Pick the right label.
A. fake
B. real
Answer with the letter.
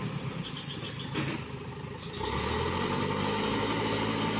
B